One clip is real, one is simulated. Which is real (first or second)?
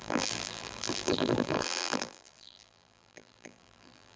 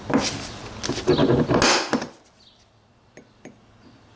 second